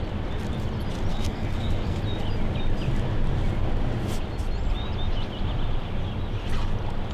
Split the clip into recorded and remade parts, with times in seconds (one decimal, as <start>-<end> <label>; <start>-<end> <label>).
0.0-1.1 recorded; 1.1-2.0 remade; 2.0-7.1 recorded